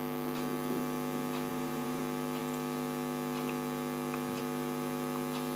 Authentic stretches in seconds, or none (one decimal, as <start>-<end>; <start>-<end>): 0.0-1.5; 2.0-5.6